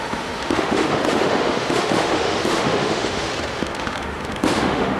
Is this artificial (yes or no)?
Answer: yes